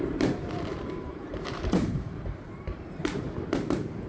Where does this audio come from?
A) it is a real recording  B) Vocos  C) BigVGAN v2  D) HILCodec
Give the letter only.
C